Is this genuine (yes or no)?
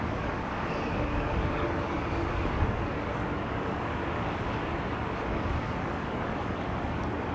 no